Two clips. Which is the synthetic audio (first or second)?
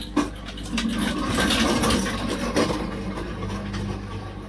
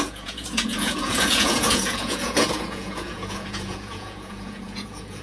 second